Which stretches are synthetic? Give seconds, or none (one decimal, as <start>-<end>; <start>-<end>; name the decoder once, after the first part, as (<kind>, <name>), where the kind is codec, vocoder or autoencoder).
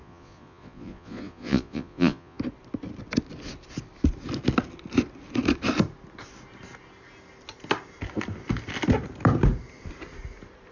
0.0-2.4 (vocoder, Vocos)